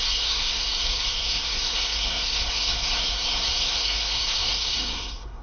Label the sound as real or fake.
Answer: fake